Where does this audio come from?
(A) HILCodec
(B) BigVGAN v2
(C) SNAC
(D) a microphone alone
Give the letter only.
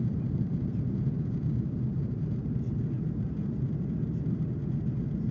B